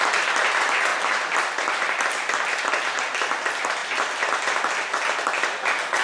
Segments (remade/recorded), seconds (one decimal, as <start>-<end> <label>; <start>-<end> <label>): 0.0-0.9 recorded; 0.9-2.7 remade; 2.7-6.0 recorded